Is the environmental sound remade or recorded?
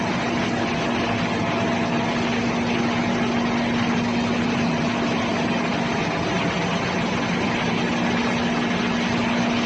recorded